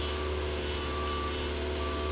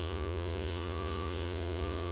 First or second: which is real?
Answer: first